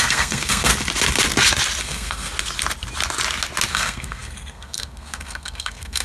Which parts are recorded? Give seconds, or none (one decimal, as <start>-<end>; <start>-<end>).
0.7-1.8; 2.3-3.7